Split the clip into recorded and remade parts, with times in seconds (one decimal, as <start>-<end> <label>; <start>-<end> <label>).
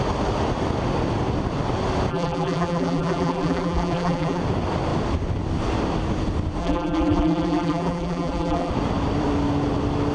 0.0-2.1 recorded; 2.1-4.4 remade; 4.4-6.6 recorded; 6.6-8.7 remade; 8.7-10.1 recorded